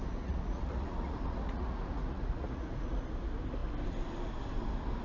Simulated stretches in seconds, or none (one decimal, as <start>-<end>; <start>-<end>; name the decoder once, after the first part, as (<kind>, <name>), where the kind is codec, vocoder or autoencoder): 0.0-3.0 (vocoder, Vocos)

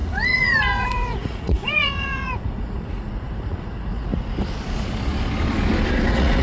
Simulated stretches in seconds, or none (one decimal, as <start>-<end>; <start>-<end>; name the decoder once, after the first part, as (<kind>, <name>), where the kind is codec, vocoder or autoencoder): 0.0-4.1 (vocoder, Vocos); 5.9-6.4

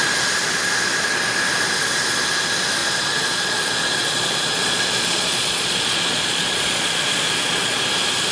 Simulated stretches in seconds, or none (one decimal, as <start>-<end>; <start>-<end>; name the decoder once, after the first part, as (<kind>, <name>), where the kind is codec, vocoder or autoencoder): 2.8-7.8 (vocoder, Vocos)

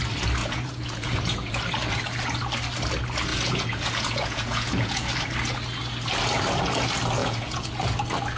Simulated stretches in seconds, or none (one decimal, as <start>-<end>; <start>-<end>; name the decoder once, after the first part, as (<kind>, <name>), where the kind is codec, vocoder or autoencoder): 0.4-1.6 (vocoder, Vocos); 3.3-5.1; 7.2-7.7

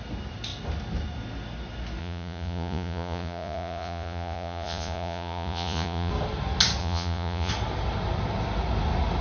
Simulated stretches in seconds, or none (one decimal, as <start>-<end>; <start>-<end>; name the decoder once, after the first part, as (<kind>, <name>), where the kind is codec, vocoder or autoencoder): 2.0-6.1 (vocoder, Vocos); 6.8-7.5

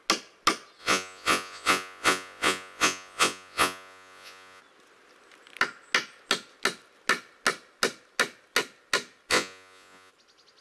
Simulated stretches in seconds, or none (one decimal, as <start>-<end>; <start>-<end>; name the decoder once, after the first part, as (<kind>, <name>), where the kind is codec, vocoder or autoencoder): 0.8-4.6 (vocoder, Vocos); 9.3-10.1